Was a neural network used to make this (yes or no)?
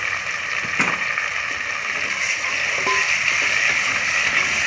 no